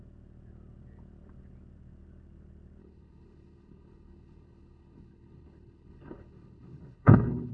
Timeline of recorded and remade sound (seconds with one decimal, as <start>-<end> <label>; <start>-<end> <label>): 0.0-2.8 recorded; 2.8-7.5 remade